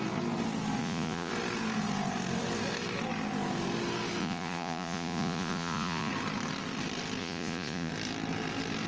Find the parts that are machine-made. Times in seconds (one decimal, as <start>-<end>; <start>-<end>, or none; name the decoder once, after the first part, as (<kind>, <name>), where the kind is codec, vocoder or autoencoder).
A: 0.8-1.3 (vocoder, Vocos); 4.2-6.1; 7.2-7.9